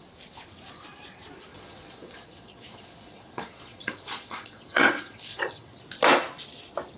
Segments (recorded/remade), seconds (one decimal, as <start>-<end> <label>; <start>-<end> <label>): 0.0-1.5 recorded; 1.5-5.7 remade; 5.7-7.0 recorded